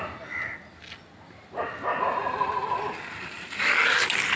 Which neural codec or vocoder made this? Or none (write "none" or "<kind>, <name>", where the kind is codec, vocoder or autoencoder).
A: none